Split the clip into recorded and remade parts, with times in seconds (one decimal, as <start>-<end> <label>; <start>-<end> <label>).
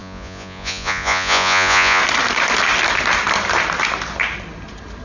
0.0-2.0 remade; 2.0-5.0 recorded